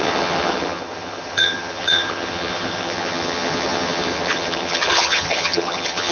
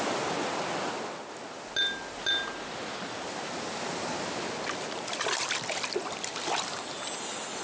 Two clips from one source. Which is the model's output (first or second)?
first